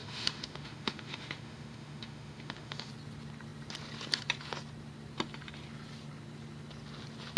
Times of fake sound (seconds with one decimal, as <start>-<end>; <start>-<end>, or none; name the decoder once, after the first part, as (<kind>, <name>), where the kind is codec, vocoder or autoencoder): 0.0-2.9 (autoencoder, DAC-VAE)